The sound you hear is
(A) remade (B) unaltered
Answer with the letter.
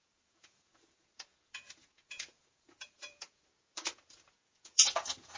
A